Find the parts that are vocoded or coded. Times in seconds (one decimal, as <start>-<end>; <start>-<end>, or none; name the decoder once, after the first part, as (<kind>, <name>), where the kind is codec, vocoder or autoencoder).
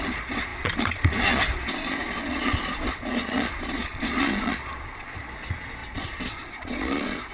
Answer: 0.0-7.3 (vocoder, Vocos)